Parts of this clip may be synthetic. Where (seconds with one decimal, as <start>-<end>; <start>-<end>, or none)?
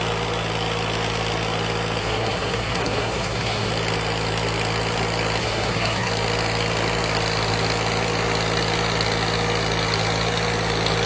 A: 2.0-3.7; 5.4-6.1